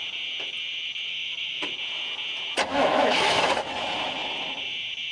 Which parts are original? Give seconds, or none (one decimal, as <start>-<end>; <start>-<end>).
0.0-1.1; 1.7-2.7; 3.5-5.1

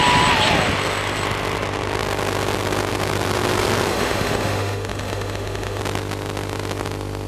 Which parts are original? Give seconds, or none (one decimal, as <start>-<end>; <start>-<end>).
0.0-3.9; 5.8-7.3

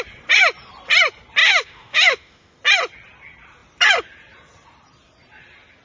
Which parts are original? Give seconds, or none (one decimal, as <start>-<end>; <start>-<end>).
0.0-1.4; 2.6-5.8

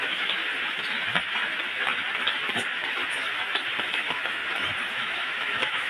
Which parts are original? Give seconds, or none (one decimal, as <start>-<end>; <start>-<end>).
0.4-3.9; 4.4-4.9

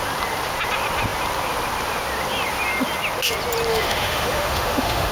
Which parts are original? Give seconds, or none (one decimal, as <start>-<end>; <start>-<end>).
0.0-3.7

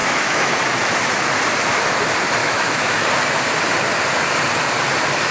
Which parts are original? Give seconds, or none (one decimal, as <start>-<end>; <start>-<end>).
0.5-2.4; 3.0-5.3

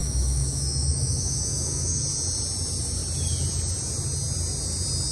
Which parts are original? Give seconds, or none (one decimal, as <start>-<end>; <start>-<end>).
2.0-5.1